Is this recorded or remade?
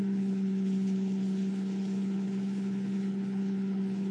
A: remade